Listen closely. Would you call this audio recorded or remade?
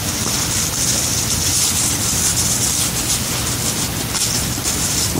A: remade